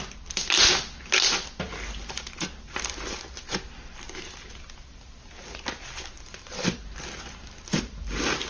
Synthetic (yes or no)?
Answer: no